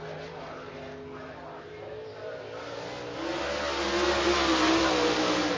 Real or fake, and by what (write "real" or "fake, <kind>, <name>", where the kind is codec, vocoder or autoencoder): real